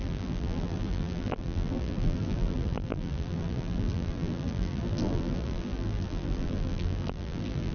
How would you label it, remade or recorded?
remade